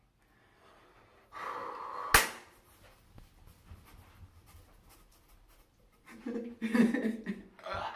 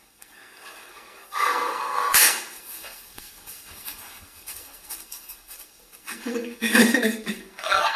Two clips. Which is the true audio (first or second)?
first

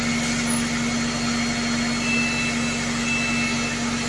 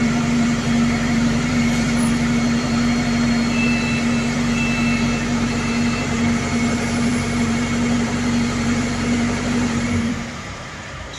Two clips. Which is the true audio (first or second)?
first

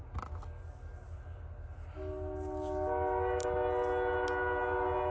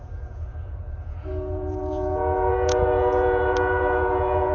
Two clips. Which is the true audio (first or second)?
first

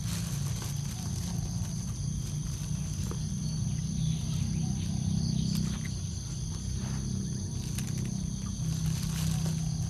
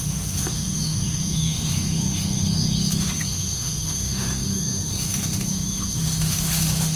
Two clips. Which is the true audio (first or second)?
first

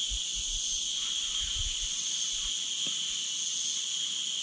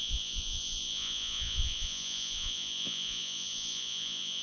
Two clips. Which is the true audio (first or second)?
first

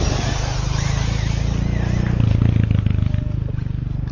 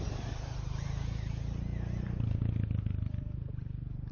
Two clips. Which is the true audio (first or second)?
first